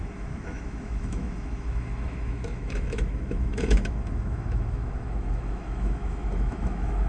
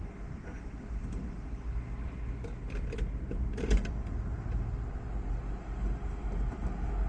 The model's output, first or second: first